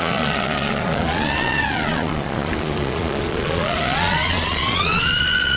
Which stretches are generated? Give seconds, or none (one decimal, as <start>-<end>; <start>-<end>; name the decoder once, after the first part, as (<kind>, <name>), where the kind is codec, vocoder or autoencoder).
0.0-5.6 (vocoder, Vocos)